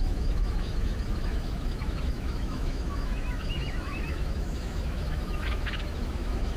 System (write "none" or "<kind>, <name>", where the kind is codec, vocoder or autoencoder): autoencoder, DAC-VAE